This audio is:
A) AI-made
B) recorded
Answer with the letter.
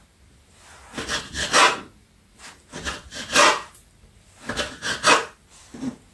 B